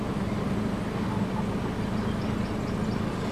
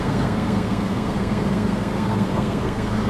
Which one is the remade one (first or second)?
second